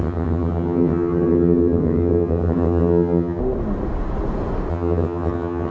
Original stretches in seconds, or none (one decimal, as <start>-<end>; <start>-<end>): 3.4-4.7